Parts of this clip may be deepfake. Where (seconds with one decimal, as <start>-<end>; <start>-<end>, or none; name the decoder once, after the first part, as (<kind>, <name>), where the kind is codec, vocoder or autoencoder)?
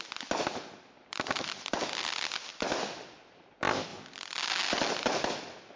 2.5-3.2 (vocoder, BigVGAN v2)